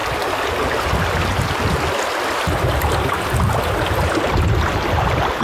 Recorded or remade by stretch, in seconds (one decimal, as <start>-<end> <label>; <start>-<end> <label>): 0.0-5.4 recorded